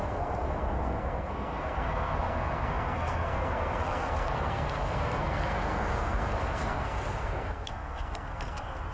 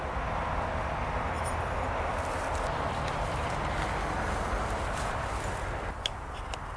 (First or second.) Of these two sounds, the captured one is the second